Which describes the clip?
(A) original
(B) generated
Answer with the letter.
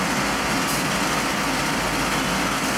A